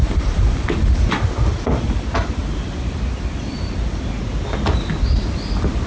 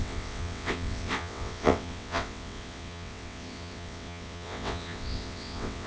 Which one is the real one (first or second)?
first